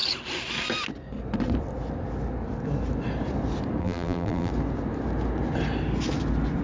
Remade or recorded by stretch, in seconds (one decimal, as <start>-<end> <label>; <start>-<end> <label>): 0.0-3.8 recorded; 3.8-4.5 remade; 4.5-6.6 recorded